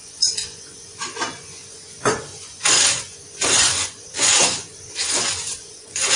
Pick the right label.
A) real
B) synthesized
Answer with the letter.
B